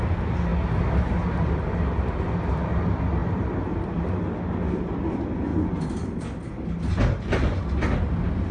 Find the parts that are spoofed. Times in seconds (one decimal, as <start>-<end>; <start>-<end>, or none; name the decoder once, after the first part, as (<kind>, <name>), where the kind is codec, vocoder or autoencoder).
none